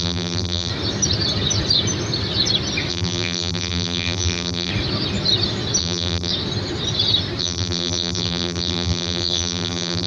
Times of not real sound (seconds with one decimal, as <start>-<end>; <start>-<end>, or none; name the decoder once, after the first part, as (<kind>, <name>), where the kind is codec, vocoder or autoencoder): 0.0-0.7 (vocoder, BigVGAN v2); 2.9-4.7; 5.8-6.3; 7.4-10.1